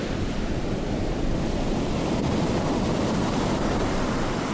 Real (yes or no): no